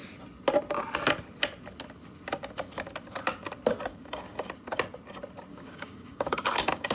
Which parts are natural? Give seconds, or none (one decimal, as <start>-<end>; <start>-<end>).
0.0-3.9; 4.5-5.5